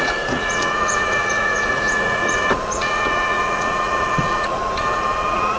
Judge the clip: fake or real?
fake